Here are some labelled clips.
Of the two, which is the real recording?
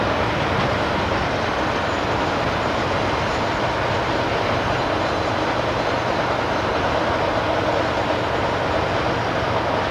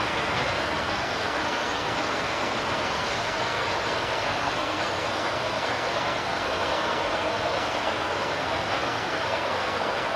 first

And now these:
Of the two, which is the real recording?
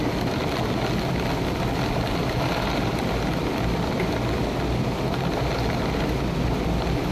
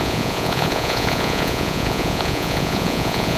first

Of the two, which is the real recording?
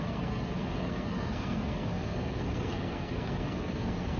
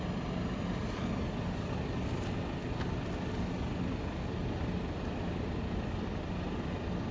second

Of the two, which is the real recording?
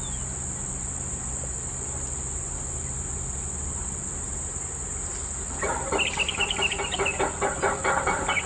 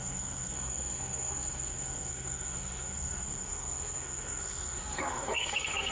first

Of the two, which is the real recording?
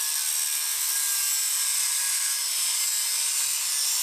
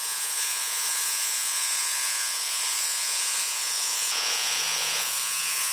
first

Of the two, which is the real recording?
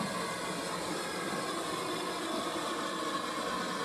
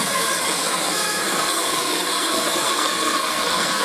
first